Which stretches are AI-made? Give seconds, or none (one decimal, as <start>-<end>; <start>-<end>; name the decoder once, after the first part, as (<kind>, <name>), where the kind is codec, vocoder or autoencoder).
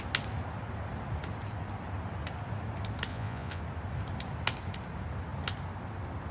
3.1-3.6 (vocoder, Vocos)